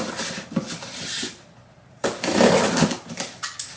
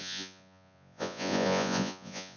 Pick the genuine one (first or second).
first